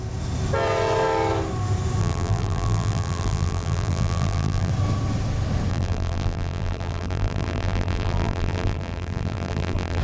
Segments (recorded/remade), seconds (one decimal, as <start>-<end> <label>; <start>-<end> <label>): 0.0-2.0 recorded; 2.0-4.7 remade; 4.7-5.7 recorded; 5.7-10.0 remade

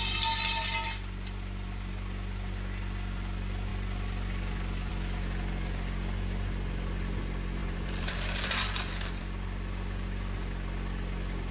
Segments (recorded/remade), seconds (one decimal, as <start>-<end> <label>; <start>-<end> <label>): 0.0-7.6 recorded; 7.6-9.2 remade; 9.2-11.5 recorded

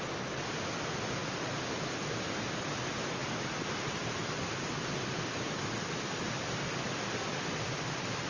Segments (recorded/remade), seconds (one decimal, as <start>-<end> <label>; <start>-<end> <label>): 0.0-8.3 recorded

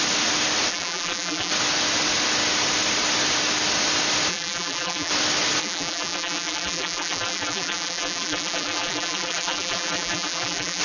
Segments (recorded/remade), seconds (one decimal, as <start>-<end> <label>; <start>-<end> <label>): 0.0-0.7 recorded; 0.7-1.5 remade; 1.5-4.3 recorded; 4.3-5.1 remade; 5.1-5.6 recorded; 5.6-10.8 remade